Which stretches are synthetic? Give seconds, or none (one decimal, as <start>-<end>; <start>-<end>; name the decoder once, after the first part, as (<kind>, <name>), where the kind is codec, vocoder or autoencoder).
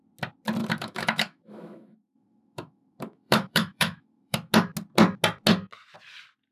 0.6-4.5 (autoencoder, DAC-VAE)